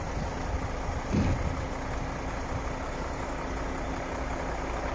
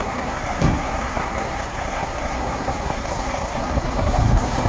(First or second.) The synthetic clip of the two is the second